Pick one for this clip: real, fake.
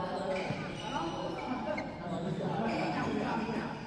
real